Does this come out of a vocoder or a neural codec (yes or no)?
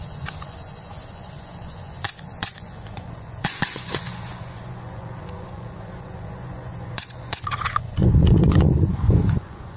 yes